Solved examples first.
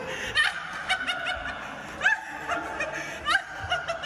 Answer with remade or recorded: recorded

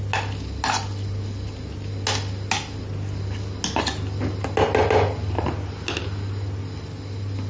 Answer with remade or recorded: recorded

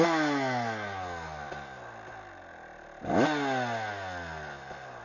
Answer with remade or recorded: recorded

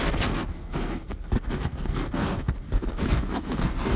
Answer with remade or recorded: remade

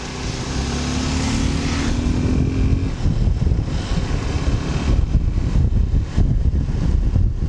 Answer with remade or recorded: recorded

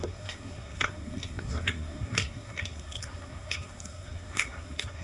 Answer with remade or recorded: remade